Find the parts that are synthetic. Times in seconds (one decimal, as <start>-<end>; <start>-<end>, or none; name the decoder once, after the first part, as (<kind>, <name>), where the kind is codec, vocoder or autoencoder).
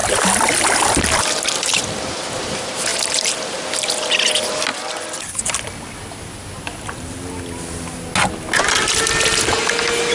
none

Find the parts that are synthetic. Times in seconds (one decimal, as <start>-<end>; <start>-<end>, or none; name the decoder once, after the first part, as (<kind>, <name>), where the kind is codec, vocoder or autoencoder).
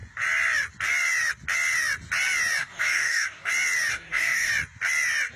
2.6-3.5 (codec, DAC); 3.9-4.5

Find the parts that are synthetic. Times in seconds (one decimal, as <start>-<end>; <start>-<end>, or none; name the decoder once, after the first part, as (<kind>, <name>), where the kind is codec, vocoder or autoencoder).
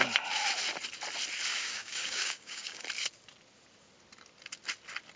1.5-2.8 (codec, DAC)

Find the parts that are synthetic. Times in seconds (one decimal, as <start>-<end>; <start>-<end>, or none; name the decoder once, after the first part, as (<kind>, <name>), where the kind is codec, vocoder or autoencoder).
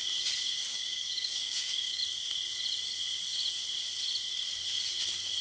0.7-2.0 (codec, DAC)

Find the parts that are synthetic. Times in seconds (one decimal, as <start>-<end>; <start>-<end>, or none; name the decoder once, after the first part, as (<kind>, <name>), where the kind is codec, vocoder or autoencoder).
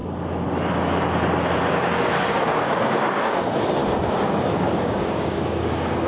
1.7-3.8 (codec, DAC); 4.4-6.1